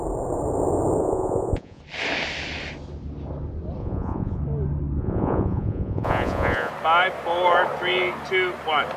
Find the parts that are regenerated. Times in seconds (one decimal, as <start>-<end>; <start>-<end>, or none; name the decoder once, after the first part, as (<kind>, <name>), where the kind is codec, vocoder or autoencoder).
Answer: 1.0-1.8 (vocoder, Vocos); 3.8-4.4; 5.0-6.7